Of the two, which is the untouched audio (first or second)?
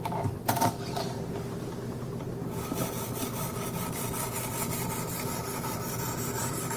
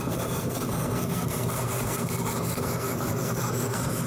first